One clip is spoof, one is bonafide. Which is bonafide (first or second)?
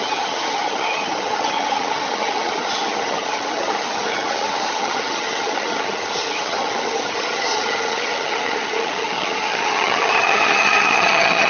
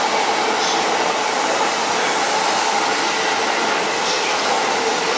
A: second